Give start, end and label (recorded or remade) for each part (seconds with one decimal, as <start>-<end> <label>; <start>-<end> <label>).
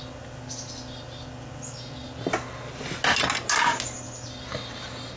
0.0-5.2 recorded